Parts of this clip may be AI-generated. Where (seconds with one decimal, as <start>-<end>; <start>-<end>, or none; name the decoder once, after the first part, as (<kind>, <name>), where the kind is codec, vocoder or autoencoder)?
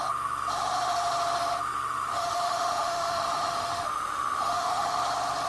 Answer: 2.1-5.0 (autoencoder, DAC-VAE)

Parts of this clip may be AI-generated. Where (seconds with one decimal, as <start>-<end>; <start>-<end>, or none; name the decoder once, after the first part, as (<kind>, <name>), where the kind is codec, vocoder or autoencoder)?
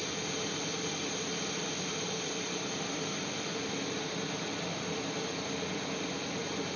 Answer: none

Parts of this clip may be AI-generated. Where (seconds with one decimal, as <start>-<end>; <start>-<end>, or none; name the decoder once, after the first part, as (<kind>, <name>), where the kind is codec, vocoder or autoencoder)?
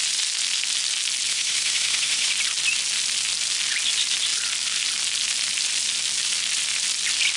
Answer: 1.3-2.3 (autoencoder, DAC-VAE)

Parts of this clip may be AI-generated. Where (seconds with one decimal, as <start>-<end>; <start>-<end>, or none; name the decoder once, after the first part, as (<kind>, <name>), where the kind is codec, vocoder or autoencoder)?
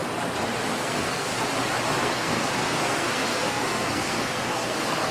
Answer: 0.8-1.3 (codec, SNAC); 2.0-5.1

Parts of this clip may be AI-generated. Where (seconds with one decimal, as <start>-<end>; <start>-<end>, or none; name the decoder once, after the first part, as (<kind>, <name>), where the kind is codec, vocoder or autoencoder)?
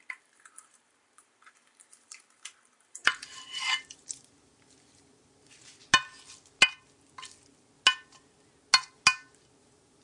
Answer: 0.0-5.8 (vocoder, BigVGAN v2); 9.6-10.0